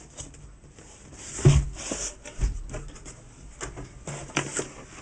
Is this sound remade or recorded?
recorded